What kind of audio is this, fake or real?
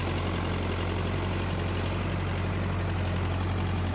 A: real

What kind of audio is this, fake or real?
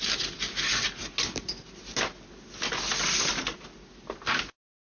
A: real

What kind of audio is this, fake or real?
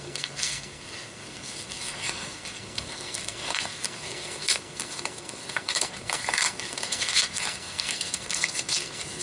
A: fake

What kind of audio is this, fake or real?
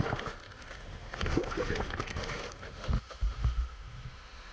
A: fake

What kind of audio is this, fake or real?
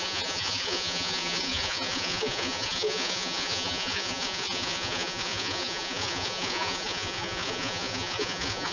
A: fake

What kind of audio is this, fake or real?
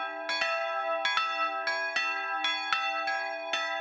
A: real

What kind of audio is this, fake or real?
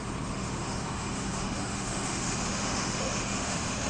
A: fake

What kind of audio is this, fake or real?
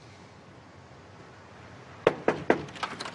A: real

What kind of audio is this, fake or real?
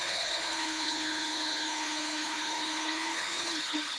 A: fake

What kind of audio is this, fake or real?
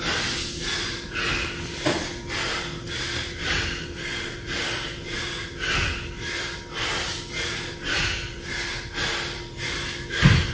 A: real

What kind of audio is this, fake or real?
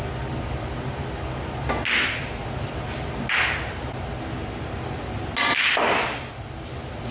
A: real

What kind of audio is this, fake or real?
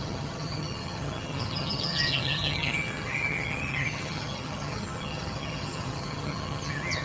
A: fake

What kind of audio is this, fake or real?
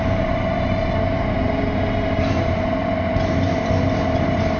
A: fake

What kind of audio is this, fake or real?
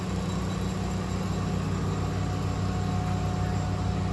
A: real